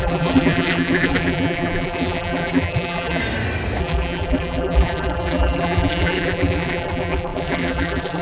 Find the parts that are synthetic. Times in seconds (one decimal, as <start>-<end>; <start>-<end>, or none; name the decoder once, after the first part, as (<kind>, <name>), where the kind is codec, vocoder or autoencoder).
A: 0.0-3.2 (vocoder, BigVGAN v2); 3.8-8.2